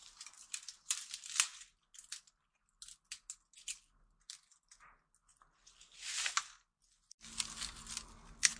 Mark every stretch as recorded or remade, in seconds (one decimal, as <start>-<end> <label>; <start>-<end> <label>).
0.0-8.6 recorded

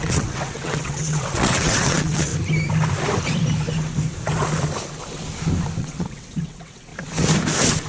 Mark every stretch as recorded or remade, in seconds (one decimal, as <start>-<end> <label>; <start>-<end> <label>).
0.0-2.3 remade; 2.3-5.8 recorded; 5.8-6.9 remade; 6.9-7.9 recorded

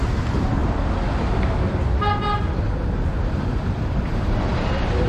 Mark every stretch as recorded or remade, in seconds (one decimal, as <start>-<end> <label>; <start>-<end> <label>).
0.0-3.1 recorded; 3.1-5.1 remade

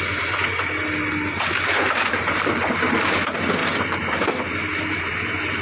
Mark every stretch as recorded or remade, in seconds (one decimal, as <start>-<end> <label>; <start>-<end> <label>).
0.0-0.5 remade; 0.5-1.9 recorded; 1.9-5.6 remade

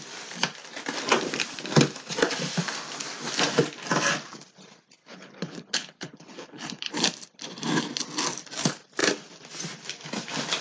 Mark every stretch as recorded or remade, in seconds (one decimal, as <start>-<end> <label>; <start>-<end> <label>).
0.0-5.0 recorded; 5.0-6.9 remade; 6.9-10.6 recorded

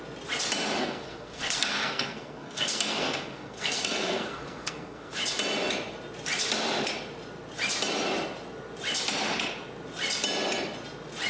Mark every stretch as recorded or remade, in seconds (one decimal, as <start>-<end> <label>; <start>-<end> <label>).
0.0-0.8 recorded; 0.8-5.2 remade; 5.2-11.3 recorded

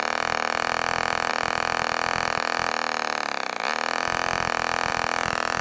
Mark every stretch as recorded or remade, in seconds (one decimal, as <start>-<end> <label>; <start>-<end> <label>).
0.0-5.6 recorded